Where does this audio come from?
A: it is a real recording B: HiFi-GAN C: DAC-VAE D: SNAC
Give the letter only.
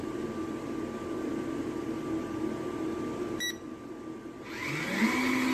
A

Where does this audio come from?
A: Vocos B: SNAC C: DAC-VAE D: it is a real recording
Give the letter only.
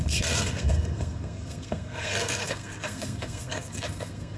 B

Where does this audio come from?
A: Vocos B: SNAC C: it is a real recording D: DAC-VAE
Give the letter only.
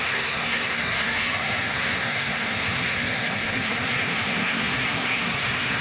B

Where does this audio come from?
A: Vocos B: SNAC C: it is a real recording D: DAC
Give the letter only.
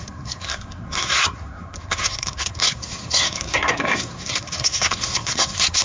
B